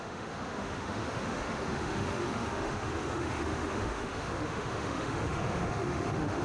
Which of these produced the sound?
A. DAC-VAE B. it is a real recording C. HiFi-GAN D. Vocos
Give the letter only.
A